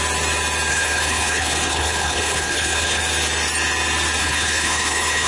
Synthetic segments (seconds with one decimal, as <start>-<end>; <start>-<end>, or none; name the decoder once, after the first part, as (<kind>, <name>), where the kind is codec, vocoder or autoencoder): 0.7-3.0 (codec, HILCodec); 4.2-5.3